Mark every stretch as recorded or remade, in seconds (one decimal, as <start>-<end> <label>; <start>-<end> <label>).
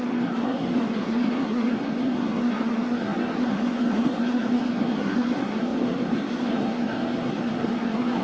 0.0-8.2 remade